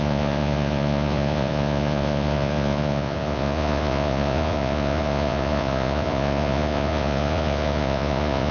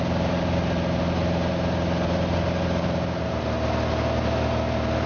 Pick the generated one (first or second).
first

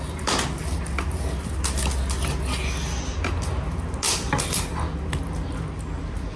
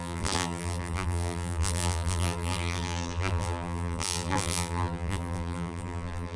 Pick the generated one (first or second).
second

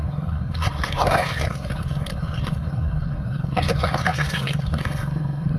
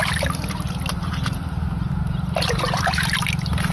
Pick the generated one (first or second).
first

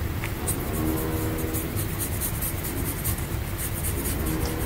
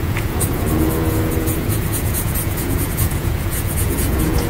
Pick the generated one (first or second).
second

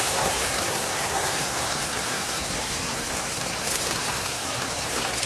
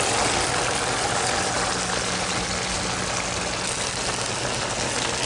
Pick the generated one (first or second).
first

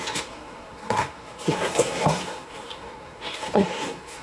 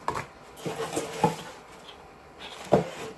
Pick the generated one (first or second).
first